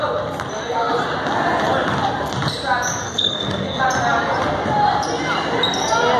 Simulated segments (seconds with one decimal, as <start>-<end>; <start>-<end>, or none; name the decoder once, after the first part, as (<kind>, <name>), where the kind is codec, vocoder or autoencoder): 3.0-3.8 (codec, SNAC)